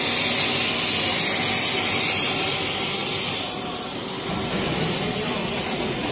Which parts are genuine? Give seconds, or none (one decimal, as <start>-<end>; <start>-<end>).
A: 0.0-5.4